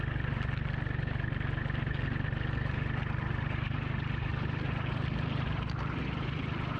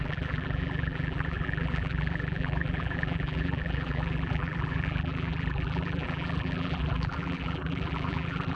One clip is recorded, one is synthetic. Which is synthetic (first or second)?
second